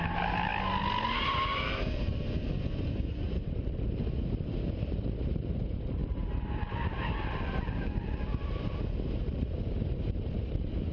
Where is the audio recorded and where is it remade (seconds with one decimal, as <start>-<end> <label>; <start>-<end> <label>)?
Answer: 0.0-0.5 remade; 0.5-1.2 recorded; 1.2-10.9 remade